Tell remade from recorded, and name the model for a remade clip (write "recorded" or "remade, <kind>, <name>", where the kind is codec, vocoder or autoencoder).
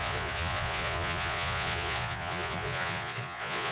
remade, vocoder, Vocos